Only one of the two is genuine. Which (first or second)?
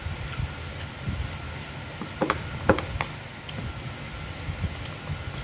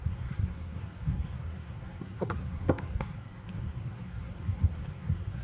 first